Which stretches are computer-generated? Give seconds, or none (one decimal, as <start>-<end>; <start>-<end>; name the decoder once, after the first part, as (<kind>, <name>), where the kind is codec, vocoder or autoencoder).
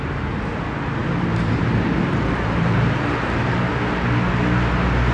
1.0-3.7 (vocoder, BigVGAN v2)